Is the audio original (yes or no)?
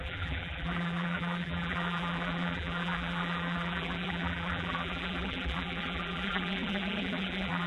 no